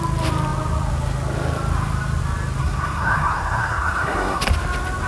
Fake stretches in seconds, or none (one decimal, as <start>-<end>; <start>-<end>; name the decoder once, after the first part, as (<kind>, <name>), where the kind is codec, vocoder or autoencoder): 2.6-4.4 (codec, SNAC)